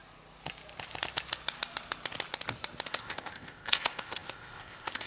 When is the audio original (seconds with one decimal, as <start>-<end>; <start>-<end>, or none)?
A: 0.0-2.9